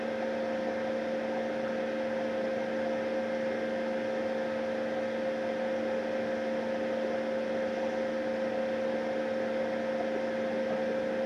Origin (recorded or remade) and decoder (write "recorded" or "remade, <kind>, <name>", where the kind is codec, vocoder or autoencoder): recorded